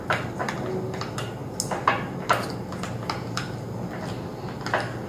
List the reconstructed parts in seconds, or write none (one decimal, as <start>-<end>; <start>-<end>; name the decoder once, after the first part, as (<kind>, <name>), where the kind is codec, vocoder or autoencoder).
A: none